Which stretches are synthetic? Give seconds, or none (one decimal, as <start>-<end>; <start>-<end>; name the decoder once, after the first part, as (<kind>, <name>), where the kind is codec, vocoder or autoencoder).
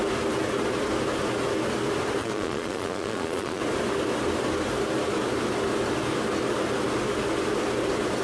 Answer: 2.2-3.6 (vocoder, Vocos)